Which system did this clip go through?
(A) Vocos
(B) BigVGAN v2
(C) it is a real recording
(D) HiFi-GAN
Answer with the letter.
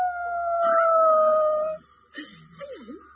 C